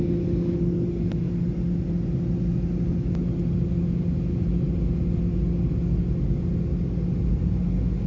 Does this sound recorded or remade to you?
recorded